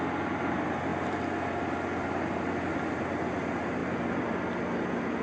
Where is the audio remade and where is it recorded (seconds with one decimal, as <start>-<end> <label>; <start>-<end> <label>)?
0.0-5.2 recorded